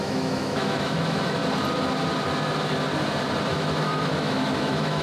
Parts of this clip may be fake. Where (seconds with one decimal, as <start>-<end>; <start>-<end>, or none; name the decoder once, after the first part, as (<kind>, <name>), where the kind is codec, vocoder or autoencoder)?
0.0-1.4 (autoencoder, DAC-VAE); 3.5-5.0